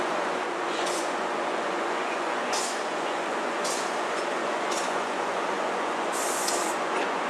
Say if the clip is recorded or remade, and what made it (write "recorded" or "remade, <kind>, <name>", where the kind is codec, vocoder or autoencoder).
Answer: remade, vocoder, Vocos